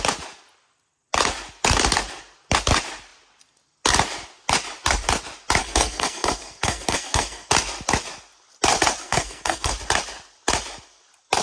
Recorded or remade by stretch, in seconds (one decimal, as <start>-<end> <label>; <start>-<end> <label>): 0.0-5.6 recorded; 5.6-7.5 remade; 7.5-9.0 recorded; 9.0-9.7 remade; 9.7-11.4 recorded